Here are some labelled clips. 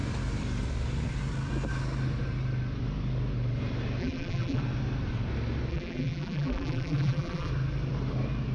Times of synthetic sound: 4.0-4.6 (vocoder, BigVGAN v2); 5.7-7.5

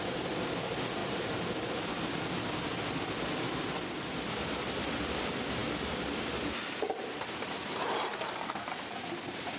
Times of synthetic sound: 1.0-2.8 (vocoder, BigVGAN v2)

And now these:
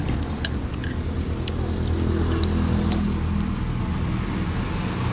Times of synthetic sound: none

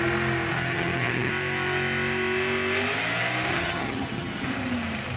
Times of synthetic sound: 0.5-1.3 (vocoder, HiFi-GAN); 3.5-4.5

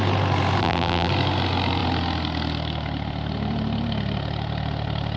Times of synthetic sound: 0.6-1.1 (vocoder, BigVGAN v2)